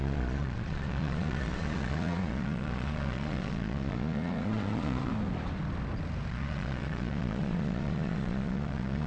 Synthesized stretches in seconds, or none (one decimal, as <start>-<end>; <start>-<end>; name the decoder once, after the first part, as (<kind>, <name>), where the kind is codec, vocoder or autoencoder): 0.0-5.1 (vocoder, Vocos); 6.3-9.1